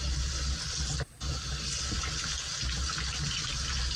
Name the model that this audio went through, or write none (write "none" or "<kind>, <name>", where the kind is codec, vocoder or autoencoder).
none